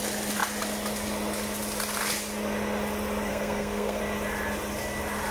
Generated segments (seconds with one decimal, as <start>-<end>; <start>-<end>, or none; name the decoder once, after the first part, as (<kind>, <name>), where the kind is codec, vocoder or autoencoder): 3.3-4.0 (codec, SNAC)

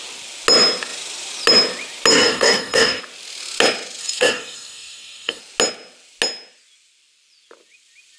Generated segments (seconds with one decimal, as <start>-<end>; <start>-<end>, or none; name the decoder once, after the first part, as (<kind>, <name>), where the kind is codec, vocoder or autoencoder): 2.1-3.0 (codec, DAC); 4.0-5.4

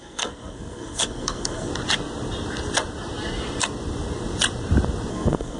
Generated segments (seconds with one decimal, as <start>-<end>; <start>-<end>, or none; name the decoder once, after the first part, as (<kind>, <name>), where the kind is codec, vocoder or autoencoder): 0.0-1.7 (codec, SNAC); 5.1-5.6

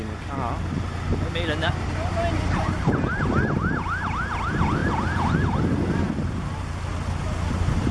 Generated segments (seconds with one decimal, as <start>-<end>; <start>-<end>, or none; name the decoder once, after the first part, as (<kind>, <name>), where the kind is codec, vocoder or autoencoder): none

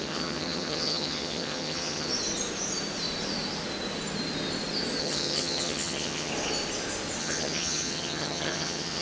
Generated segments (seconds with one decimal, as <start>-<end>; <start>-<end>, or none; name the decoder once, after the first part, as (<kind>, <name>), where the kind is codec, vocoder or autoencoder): 0.0-2.1 (vocoder, HiFi-GAN); 5.0-6.3; 7.2-9.0

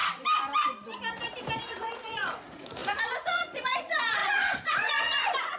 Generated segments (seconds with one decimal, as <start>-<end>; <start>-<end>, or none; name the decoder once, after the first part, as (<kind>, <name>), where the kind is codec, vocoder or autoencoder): 1.7-5.6 (vocoder, Vocos)

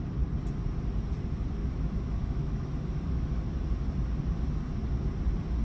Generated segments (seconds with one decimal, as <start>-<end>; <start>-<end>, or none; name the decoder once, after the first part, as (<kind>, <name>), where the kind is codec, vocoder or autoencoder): 1.6-3.4 (autoencoder, DAC-VAE)